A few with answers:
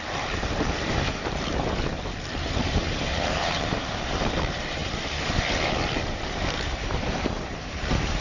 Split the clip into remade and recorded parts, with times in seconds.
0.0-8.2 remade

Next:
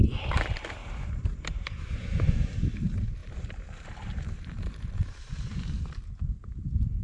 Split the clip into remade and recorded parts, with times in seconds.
0.0-0.8 recorded; 0.8-2.7 remade; 2.7-3.2 recorded; 3.2-5.9 remade; 5.9-7.0 recorded

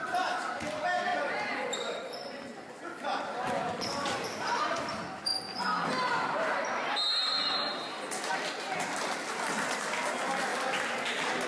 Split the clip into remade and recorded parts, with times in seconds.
0.0-1.1 recorded; 1.1-2.7 remade; 2.7-11.5 recorded

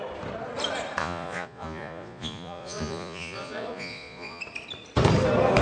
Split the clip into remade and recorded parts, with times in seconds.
0.0-1.0 recorded; 1.0-4.4 remade; 4.4-5.6 recorded

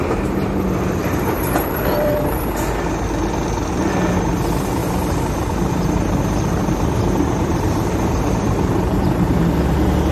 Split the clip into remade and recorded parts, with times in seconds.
0.0-1.0 recorded; 1.0-2.4 remade; 2.4-4.8 recorded; 4.8-9.3 remade; 9.3-10.1 recorded

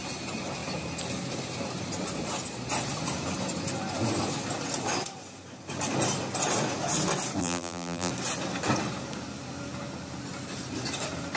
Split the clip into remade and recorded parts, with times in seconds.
0.0-7.4 recorded; 7.4-8.1 remade; 8.1-11.4 recorded

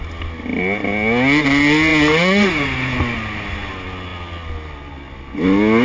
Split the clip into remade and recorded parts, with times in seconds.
0.0-5.8 recorded